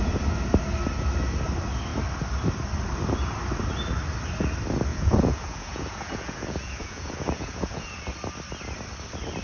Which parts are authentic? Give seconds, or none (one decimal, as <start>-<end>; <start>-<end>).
0.0-4.9; 8.0-9.4